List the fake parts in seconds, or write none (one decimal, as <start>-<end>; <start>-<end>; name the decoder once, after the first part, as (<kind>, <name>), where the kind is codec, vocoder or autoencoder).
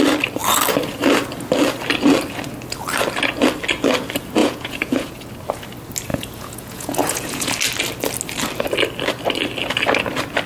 4.4-5.3 (vocoder, Vocos); 6.1-7.5